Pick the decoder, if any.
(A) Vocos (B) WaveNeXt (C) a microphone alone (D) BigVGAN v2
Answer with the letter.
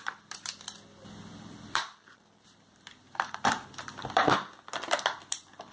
D